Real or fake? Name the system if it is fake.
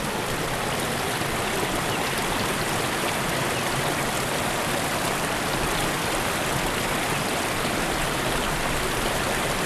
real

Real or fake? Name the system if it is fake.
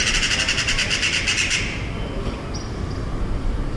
real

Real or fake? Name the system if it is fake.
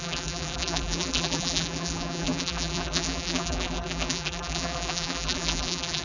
fake, vocoder, BigVGAN v2